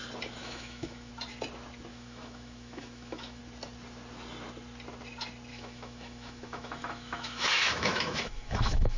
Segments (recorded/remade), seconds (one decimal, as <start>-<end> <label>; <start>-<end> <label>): 0.0-0.4 recorded; 0.4-1.1 remade; 1.1-1.9 recorded; 1.9-3.4 remade; 3.4-5.5 recorded; 5.5-9.0 remade